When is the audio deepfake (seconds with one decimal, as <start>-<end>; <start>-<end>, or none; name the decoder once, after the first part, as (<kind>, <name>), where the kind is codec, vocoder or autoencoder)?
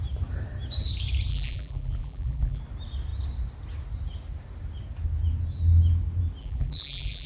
1.3-2.6 (vocoder, BigVGAN v2); 6.4-7.3